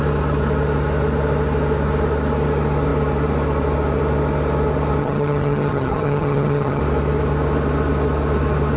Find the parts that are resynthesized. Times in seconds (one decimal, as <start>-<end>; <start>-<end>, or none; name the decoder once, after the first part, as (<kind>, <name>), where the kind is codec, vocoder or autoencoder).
5.0-6.8 (vocoder, HiFi-GAN)